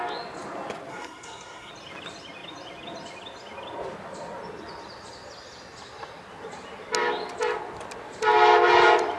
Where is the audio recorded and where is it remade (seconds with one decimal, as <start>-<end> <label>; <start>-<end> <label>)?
0.0-0.9 recorded; 0.9-1.7 remade; 1.7-9.2 recorded